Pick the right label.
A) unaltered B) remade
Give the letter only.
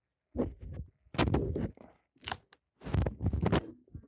A